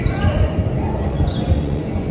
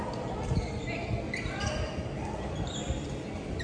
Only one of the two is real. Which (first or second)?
second